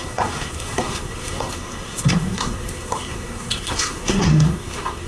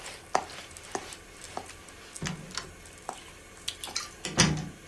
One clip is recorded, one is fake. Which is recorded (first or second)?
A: second